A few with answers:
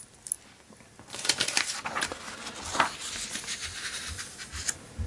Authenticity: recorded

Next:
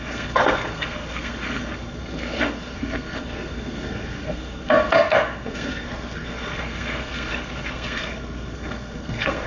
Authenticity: remade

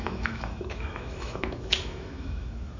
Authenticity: remade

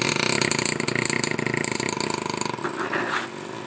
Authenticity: recorded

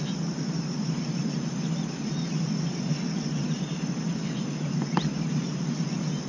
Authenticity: recorded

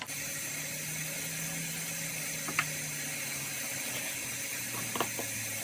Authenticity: recorded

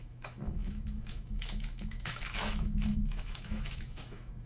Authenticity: remade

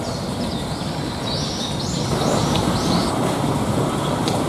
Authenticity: recorded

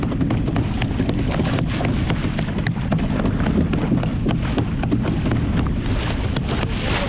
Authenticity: recorded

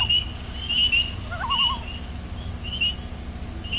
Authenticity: recorded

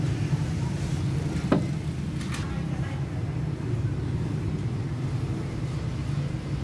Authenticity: recorded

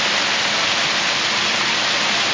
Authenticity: recorded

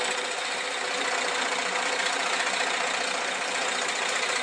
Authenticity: recorded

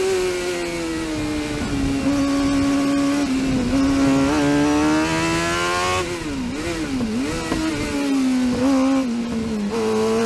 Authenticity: recorded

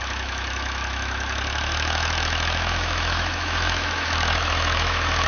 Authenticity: remade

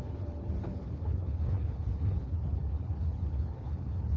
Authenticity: remade